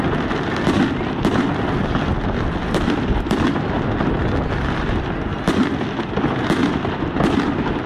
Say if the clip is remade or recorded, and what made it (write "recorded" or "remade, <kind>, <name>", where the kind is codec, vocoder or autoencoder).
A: recorded